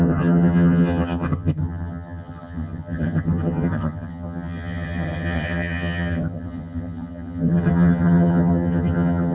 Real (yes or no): no